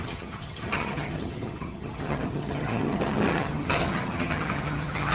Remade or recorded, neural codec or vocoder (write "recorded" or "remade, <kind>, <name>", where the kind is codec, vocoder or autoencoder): remade, vocoder, HiFi-GAN